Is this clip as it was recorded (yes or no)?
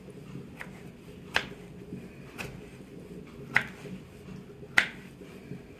yes